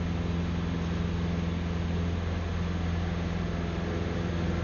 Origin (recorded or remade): recorded